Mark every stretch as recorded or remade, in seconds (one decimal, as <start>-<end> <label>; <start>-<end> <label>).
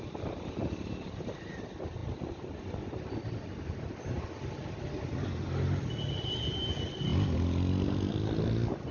0.0-8.9 recorded